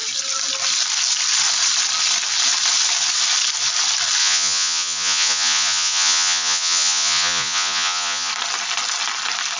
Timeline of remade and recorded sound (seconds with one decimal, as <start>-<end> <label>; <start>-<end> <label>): 0.0-4.2 recorded; 4.2-8.3 remade; 8.3-9.6 recorded